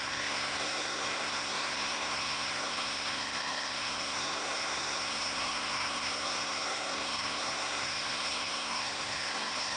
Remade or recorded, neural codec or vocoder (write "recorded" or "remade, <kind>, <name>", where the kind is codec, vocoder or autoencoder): remade, codec, SNAC